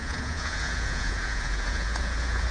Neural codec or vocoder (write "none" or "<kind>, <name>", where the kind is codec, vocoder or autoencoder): vocoder, Vocos